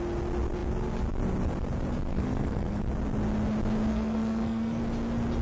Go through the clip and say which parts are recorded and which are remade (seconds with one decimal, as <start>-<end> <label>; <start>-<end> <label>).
0.0-2.1 recorded; 2.1-2.8 remade; 2.8-3.9 recorded; 3.9-4.8 remade; 4.8-5.4 recorded